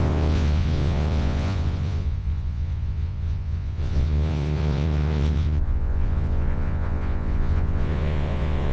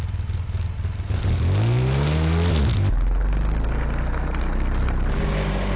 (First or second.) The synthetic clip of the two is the first